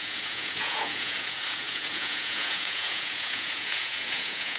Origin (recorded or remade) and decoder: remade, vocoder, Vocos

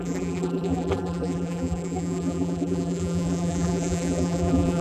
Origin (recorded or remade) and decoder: remade, vocoder, BigVGAN v2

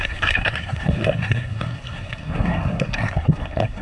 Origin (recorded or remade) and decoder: remade, codec, SNAC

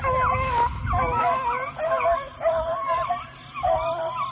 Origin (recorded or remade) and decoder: recorded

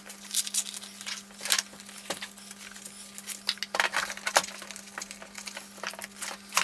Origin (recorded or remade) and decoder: recorded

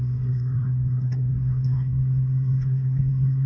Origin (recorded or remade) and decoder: remade, codec, SNAC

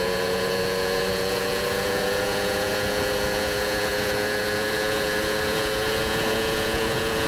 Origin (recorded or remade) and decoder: remade, vocoder, Vocos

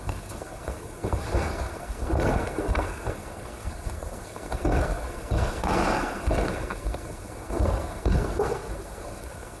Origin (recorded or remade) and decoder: remade, codec, SNAC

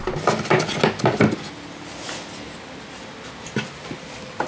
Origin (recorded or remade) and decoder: recorded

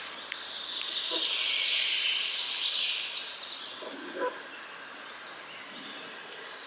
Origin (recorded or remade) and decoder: recorded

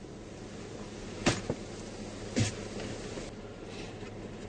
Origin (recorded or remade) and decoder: recorded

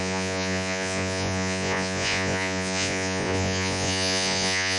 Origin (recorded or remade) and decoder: remade, vocoder, Vocos